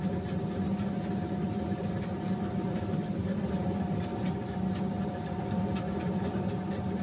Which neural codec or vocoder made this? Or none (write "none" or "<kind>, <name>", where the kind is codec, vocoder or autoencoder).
none